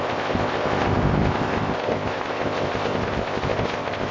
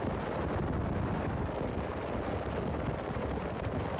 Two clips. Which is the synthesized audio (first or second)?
first